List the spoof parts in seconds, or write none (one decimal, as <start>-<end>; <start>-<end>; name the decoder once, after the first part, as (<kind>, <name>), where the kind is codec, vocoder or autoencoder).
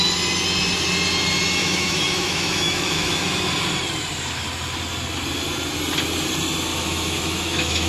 1.6-3.5 (autoencoder, DAC-VAE); 6.7-7.9